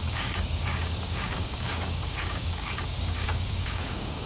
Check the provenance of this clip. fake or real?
fake